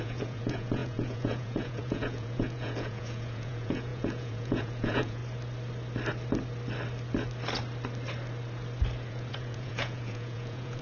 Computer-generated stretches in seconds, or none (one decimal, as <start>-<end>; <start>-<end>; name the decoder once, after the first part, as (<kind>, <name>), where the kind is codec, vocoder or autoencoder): 0.0-5.2 (vocoder, Vocos); 9.1-10.8